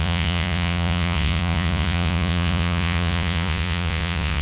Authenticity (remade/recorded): remade